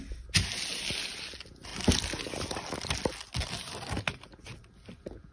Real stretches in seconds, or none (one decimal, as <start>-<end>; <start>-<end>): 0.0-5.3